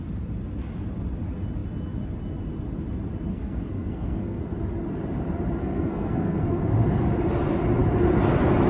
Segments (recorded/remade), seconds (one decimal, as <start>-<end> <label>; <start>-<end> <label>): 0.0-3.3 recorded; 3.3-4.4 remade; 4.4-5.6 recorded; 5.6-6.6 remade; 6.6-8.7 recorded